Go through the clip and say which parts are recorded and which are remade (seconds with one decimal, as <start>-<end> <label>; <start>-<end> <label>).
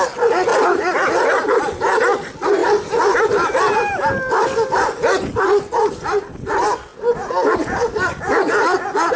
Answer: 0.0-0.5 recorded; 0.5-1.2 remade; 1.2-2.6 recorded; 2.6-3.9 remade; 3.9-9.2 recorded